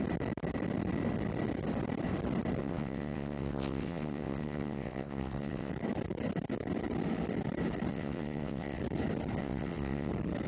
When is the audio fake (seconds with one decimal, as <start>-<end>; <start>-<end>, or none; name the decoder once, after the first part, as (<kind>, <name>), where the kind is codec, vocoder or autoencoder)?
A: 2.6-5.7 (vocoder, WaveNeXt); 7.9-8.8; 9.4-10.1